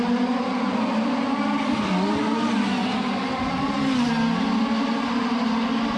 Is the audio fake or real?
real